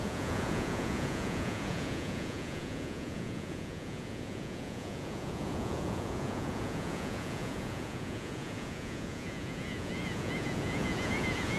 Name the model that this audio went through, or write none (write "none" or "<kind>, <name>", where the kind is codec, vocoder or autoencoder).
vocoder, Vocos